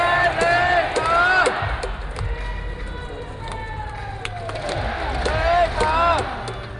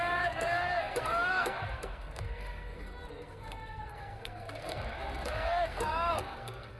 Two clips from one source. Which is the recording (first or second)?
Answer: first